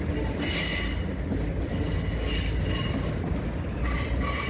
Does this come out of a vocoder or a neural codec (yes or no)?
no